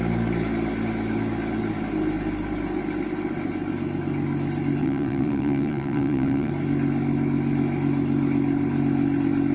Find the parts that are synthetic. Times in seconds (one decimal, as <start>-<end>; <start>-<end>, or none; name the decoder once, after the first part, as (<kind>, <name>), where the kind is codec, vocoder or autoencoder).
4.8-6.5 (vocoder, WaveNeXt)